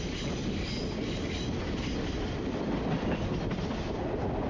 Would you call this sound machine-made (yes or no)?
no